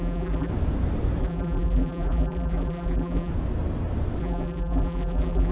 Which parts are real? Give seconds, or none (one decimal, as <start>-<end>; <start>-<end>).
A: 0.5-1.2; 3.3-4.2